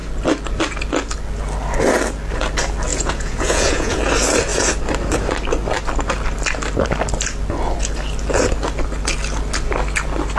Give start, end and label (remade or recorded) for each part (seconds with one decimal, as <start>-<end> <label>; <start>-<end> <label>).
0.0-2.9 recorded; 2.9-4.0 remade; 4.0-10.4 recorded